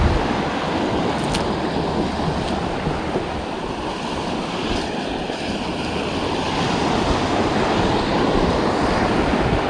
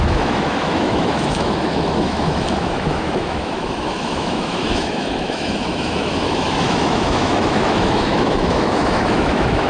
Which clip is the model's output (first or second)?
second